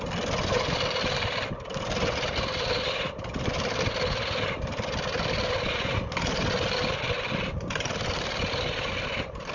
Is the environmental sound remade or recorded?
recorded